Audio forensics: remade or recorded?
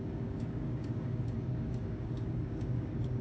remade